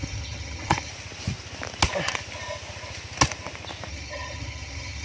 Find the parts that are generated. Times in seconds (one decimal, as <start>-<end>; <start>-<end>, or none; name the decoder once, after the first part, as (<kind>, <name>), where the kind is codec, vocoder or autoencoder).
0.0-0.9 (vocoder, HiFi-GAN); 3.9-5.0